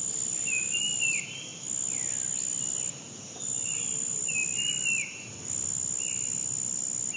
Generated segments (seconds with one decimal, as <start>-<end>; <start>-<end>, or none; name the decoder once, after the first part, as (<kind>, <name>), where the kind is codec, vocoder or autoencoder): 0.0-1.5 (vocoder, BigVGAN v2); 3.4-4.4